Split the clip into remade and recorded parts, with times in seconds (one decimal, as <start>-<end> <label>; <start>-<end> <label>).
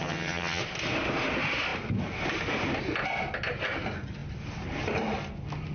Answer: 0.0-0.6 remade; 0.6-5.7 recorded